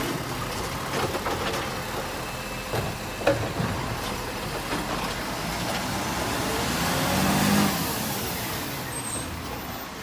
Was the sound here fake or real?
real